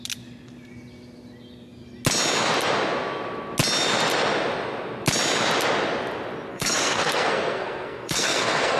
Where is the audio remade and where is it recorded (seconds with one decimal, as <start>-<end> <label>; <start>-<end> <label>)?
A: 0.0-6.5 recorded; 6.5-8.8 remade

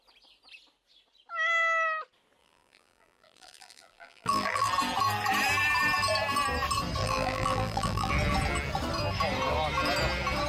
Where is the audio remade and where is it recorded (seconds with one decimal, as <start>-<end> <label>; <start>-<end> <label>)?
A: 0.0-2.4 recorded; 2.4-4.7 remade; 4.7-7.0 recorded; 7.0-8.1 remade; 8.1-10.5 recorded

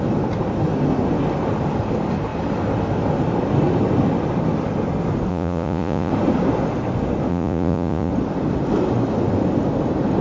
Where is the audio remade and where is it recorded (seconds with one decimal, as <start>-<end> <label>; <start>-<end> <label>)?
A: 0.0-5.3 recorded; 5.3-6.1 remade; 6.1-7.3 recorded; 7.3-8.1 remade; 8.1-10.2 recorded

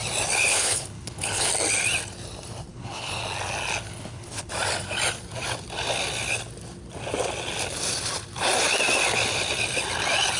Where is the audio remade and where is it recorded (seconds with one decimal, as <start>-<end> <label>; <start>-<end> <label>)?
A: 0.0-0.5 recorded; 0.5-1.5 remade; 1.5-2.7 recorded; 2.7-3.2 remade; 3.2-3.9 recorded; 3.9-4.5 remade; 4.5-10.4 recorded

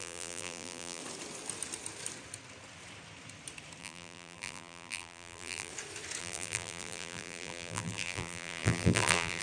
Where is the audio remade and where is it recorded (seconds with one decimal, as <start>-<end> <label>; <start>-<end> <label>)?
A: 0.0-1.0 remade; 1.0-3.8 recorded; 3.8-5.7 remade; 5.7-6.2 recorded; 6.2-9.4 remade